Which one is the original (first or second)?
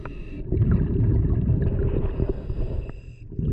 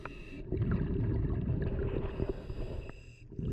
second